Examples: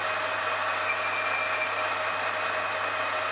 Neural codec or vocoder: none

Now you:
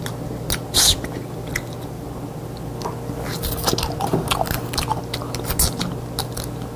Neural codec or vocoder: none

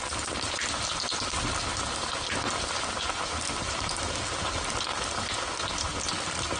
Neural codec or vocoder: none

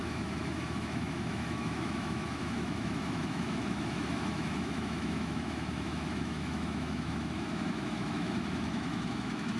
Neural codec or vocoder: autoencoder, DAC-VAE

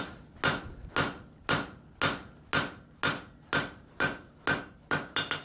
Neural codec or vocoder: none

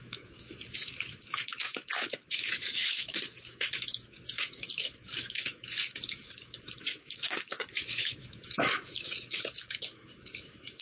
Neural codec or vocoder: autoencoder, DAC-VAE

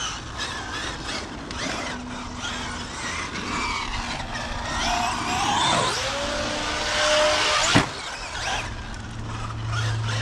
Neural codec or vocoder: none